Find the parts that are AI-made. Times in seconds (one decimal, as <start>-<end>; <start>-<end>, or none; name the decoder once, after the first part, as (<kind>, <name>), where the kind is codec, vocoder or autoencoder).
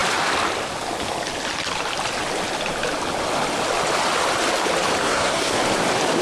5.0-5.6 (codec, SNAC)